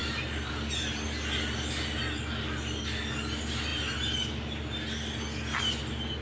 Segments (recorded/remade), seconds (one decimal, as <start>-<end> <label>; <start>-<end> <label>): 0.0-6.2 recorded